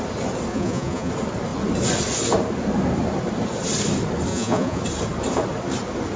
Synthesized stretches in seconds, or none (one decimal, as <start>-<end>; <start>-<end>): 0.5-1.1; 4.3-4.8